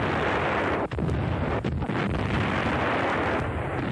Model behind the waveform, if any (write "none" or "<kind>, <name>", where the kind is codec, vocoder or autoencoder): none